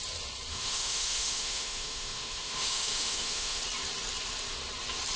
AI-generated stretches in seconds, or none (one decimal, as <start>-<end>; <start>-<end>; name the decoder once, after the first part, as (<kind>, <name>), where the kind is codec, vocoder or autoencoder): 0.5-3.6 (autoencoder, DAC-VAE)